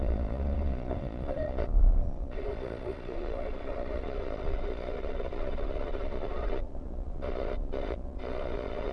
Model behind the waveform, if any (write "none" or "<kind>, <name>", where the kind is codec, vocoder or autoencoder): vocoder, Vocos